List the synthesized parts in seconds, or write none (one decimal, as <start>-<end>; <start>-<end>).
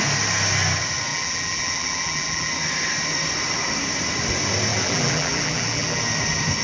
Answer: 1.1-2.5; 4.7-6.0